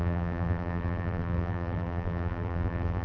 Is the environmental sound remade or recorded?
remade